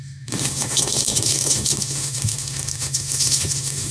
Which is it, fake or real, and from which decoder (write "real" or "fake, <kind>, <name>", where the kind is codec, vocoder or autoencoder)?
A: fake, autoencoder, DAC-VAE